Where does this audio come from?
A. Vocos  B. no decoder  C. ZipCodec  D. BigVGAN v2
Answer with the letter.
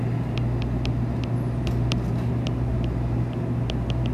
B